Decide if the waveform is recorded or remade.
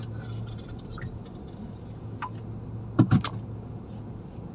recorded